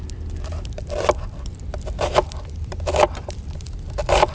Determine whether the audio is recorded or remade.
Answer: remade